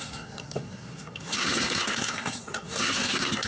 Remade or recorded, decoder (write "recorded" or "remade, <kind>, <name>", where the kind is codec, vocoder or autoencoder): remade, codec, SNAC